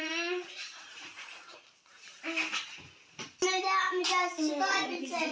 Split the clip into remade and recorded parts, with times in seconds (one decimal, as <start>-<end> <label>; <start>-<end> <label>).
0.0-1.5 remade; 1.5-4.7 recorded; 4.7-5.3 remade